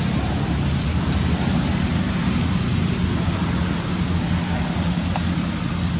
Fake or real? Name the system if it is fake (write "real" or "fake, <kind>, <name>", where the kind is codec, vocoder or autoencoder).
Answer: real